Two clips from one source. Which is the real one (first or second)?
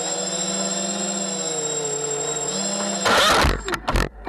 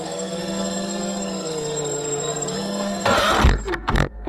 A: first